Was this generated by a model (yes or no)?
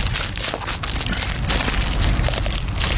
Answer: no